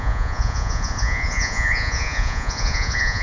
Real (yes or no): no